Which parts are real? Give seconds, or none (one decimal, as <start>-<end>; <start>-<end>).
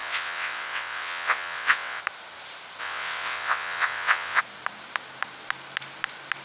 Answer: 2.0-2.8; 4.4-6.4